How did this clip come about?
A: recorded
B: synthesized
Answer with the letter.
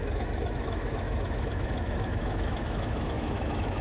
B